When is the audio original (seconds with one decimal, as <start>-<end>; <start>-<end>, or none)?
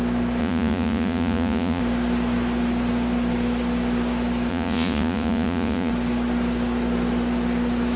0.0-0.4; 1.8-4.5; 5.9-8.0